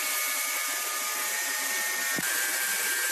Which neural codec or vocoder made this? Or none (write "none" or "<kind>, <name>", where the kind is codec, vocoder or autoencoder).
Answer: none